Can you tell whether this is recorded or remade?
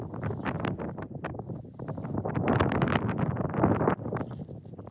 remade